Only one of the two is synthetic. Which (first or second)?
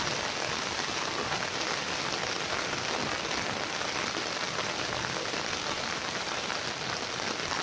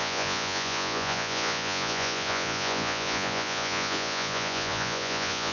second